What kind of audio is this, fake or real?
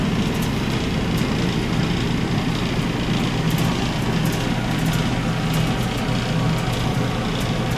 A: real